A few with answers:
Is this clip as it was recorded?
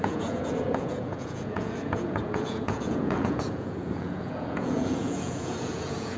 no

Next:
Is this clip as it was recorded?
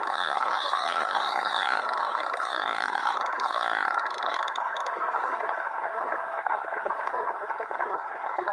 no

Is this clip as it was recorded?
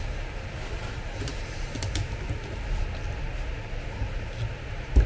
yes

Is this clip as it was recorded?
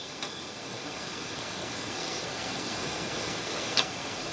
no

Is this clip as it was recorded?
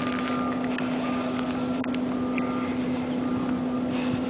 yes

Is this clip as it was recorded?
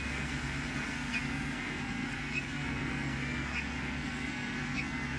no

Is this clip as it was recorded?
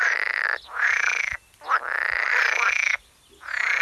yes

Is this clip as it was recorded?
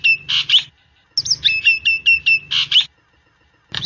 yes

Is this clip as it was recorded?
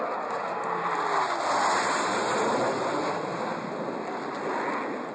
yes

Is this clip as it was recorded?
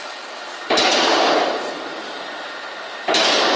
yes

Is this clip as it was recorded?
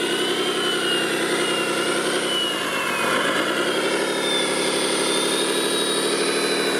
yes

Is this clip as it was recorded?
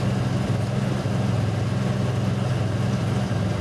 yes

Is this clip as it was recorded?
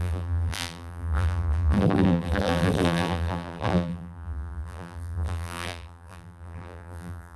no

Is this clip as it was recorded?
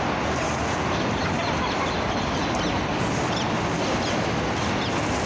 yes